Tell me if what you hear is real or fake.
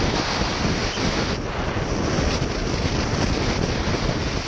real